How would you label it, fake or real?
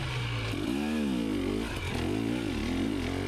real